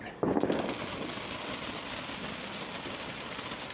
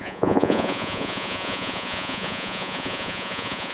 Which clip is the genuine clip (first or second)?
first